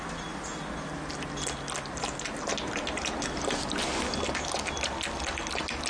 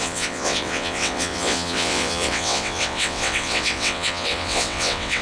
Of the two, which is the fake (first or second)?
second